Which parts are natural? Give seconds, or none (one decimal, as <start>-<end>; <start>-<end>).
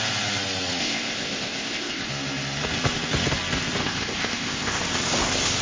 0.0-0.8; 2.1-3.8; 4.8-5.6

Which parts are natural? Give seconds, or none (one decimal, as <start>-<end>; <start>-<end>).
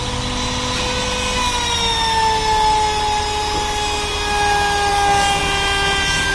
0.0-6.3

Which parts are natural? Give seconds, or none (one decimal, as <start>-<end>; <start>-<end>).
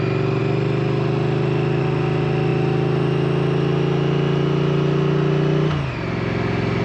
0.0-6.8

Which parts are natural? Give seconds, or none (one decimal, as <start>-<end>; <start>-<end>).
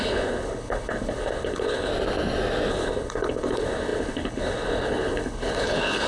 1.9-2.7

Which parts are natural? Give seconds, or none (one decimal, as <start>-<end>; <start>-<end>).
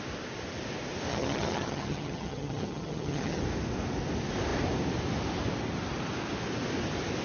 0.0-1.1; 3.4-7.2